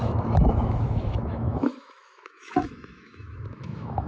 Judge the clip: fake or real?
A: fake